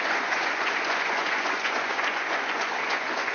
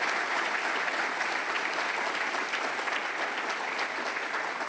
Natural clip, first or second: second